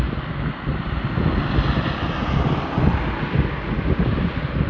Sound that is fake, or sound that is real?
real